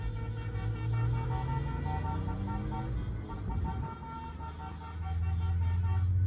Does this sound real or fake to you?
real